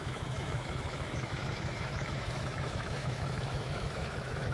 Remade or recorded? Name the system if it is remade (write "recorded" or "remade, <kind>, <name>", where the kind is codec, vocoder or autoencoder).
remade, autoencoder, DAC-VAE